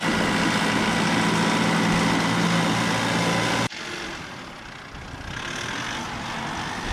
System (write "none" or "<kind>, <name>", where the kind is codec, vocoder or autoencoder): none